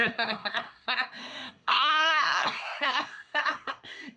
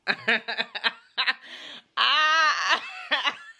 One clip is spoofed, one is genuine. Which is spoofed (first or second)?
first